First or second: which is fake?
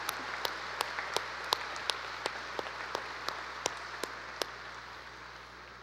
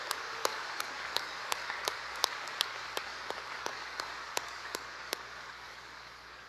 second